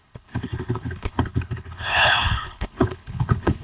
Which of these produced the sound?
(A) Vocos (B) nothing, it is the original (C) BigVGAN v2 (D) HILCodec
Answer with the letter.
D